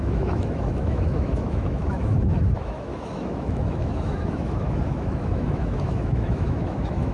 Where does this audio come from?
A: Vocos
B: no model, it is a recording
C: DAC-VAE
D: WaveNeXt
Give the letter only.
C